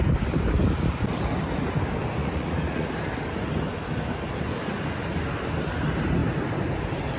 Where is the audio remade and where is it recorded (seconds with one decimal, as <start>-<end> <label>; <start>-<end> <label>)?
0.0-2.2 recorded; 2.2-2.9 remade; 2.9-7.2 recorded